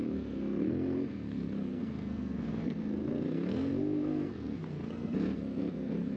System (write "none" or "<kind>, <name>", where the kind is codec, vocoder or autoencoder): codec, SNAC